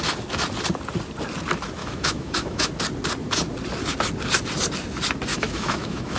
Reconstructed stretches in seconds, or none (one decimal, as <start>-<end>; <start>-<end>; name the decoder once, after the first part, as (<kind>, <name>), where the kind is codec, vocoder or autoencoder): 1.8-2.7 (autoencoder, DAC-VAE); 5.3-6.2